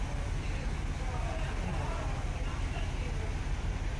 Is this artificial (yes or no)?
no